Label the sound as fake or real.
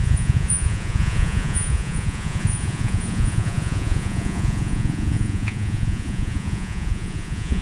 fake